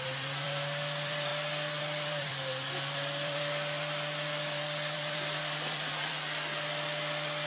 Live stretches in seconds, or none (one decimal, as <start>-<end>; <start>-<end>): 1.3-1.8